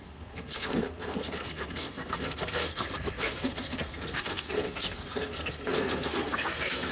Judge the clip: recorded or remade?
remade